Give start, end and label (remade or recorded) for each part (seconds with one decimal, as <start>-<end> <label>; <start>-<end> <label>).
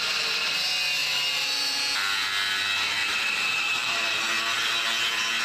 0.0-1.0 recorded; 1.0-1.8 remade; 1.8-3.0 recorded; 3.0-4.2 remade; 4.2-5.4 recorded